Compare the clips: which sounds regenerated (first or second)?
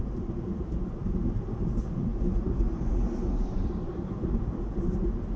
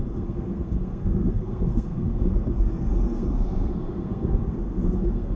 second